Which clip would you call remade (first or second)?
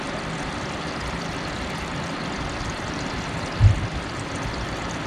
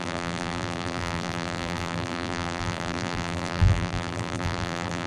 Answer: second